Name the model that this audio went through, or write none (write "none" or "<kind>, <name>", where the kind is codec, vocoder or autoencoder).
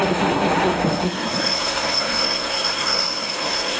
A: codec, SNAC